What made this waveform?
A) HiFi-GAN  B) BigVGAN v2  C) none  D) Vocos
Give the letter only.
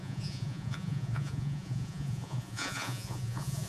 D